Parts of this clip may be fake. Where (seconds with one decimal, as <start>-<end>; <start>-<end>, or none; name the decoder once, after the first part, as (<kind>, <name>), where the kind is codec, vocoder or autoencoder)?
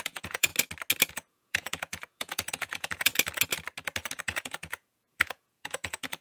0.0-0.5 (vocoder, Vocos); 1.1-3.1; 4.2-6.2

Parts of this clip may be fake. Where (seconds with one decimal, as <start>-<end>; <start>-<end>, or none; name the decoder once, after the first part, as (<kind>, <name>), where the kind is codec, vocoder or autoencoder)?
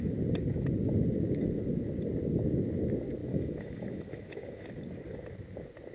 3.2-4.7 (autoencoder, DAC-VAE)